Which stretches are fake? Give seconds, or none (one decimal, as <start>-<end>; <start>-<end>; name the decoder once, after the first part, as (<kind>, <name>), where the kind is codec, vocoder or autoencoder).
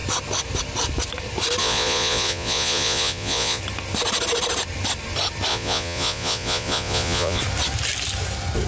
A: 1.6-3.6 (vocoder, Vocos); 5.5-7.4